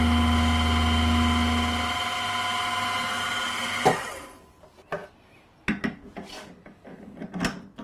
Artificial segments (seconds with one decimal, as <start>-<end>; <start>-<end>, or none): none